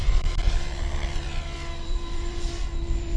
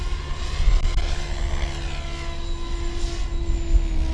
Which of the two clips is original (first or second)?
second